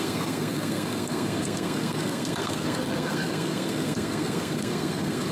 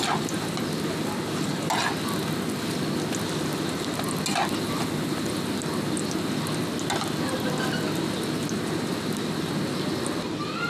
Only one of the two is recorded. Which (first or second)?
second